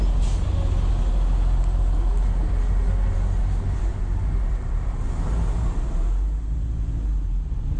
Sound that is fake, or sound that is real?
real